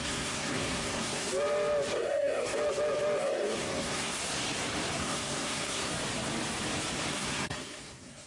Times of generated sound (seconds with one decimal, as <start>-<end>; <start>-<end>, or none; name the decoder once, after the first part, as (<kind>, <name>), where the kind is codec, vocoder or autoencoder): 0.0-1.3 (codec, SNAC); 1.9-2.6; 3.2-4.2; 5.0-5.9; 7.1-8.3